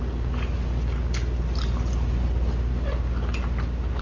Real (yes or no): yes